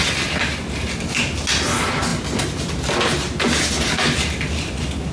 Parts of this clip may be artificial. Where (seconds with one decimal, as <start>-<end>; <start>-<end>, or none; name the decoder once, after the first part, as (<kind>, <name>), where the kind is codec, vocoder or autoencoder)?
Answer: none